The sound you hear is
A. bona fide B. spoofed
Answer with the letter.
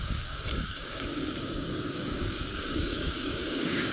B